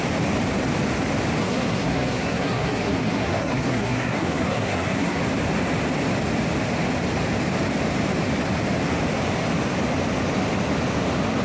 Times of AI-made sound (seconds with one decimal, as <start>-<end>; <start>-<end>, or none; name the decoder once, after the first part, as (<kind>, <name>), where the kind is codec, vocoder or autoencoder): 1.4-5.2 (codec, SNAC)

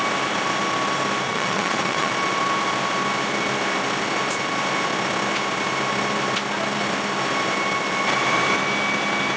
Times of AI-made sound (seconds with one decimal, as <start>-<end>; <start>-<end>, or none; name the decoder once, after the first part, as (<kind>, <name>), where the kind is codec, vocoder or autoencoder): 1.3-2.1 (vocoder, Vocos)

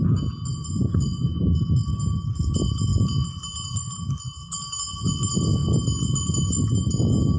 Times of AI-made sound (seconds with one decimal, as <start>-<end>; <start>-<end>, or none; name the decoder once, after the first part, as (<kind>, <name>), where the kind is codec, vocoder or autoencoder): 0.5-1.4 (vocoder, Vocos)